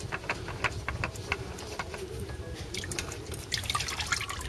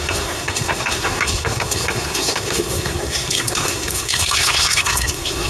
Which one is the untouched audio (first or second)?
first